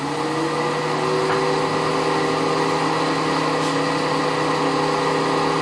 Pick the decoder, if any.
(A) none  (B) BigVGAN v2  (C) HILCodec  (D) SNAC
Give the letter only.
A